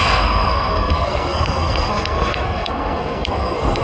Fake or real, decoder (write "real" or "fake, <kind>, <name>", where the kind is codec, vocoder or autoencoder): fake, codec, SNAC